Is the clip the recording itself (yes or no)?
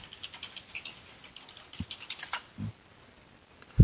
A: yes